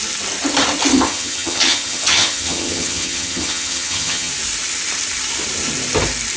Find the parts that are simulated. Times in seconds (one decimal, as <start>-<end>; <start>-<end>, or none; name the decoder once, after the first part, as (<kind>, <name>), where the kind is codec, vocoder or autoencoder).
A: 0.9-4.3 (vocoder, HiFi-GAN)